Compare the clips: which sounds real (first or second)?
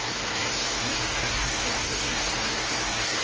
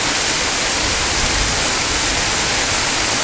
second